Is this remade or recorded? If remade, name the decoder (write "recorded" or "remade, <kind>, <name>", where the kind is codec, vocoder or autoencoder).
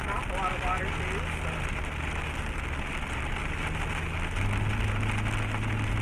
recorded